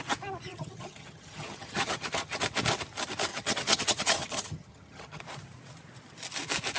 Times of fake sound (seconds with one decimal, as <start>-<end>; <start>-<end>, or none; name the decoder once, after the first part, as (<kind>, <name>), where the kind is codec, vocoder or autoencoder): 0.5-2.4 (vocoder, HiFi-GAN); 3.3-5.2